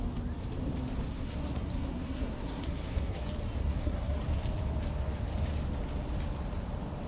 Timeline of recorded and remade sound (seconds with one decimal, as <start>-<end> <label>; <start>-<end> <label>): 0.0-1.1 recorded; 1.1-3.2 remade; 3.2-3.6 recorded; 3.6-4.2 remade; 4.2-7.1 recorded